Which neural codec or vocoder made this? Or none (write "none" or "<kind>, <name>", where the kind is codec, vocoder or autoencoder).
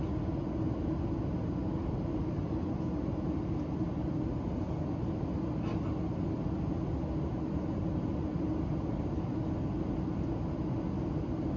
none